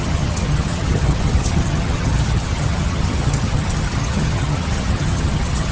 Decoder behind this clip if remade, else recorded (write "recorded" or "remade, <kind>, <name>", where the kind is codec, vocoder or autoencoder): remade, vocoder, HiFi-GAN